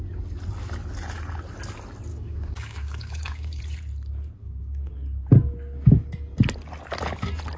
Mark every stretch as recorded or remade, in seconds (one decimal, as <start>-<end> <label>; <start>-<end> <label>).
0.0-2.1 recorded; 2.1-3.6 remade; 3.6-4.4 recorded; 4.4-4.9 remade; 4.9-7.6 recorded